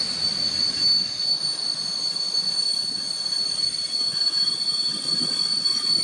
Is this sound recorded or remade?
recorded